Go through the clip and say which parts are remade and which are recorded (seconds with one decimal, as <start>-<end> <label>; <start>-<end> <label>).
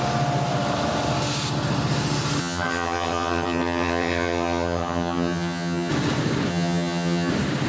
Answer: 0.0-2.4 recorded; 2.4-5.9 remade; 5.9-6.5 recorded; 6.5-7.3 remade; 7.3-7.7 recorded